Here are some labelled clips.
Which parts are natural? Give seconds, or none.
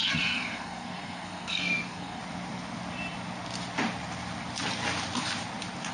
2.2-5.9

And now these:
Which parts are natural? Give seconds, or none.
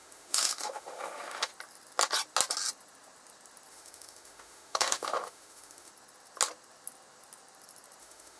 1.5-3.7; 5.9-8.0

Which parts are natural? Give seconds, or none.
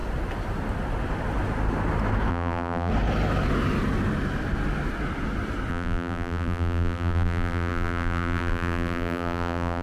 0.0-2.3; 2.9-5.7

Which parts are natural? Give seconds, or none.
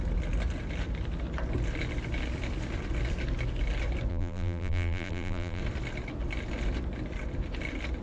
0.0-4.1; 5.6-8.0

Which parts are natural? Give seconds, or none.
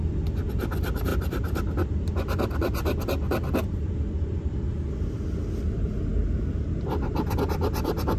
0.0-8.2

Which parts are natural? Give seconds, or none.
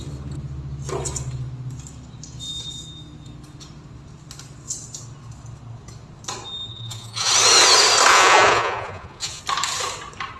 0.0-6.7; 7.3-8.1; 9.4-10.4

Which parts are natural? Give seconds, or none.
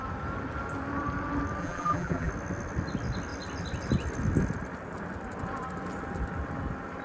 0.0-1.6; 2.3-7.0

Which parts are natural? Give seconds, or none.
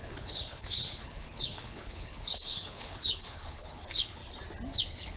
4.2-4.8